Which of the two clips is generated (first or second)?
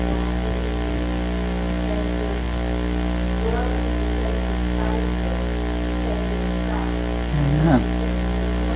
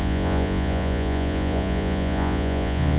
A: second